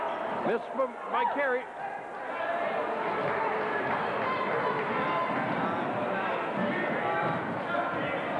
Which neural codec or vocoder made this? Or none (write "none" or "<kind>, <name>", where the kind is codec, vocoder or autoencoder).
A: none